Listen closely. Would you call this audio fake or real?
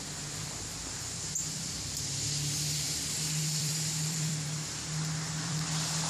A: fake